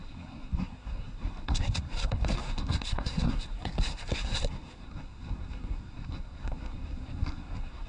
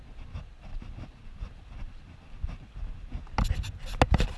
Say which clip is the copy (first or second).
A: first